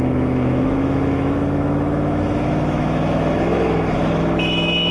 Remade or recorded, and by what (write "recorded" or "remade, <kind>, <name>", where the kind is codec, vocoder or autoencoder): remade, autoencoder, DAC-VAE